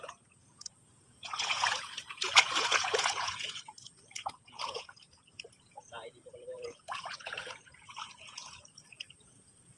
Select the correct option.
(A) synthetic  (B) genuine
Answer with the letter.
A